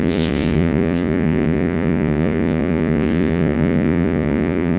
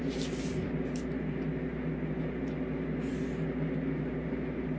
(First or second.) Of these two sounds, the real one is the second